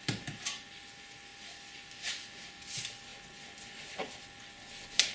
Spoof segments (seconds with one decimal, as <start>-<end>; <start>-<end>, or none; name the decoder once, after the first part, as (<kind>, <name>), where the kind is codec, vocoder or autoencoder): none